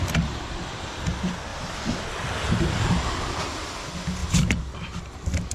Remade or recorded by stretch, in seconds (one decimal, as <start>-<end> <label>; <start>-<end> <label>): 0.0-1.5 recorded; 1.5-2.5 remade; 2.5-5.5 recorded